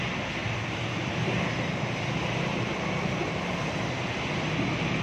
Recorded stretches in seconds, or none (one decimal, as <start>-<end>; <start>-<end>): 0.0-5.0